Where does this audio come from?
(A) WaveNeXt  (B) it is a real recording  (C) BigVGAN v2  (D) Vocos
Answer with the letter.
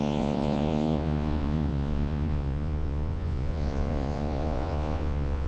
D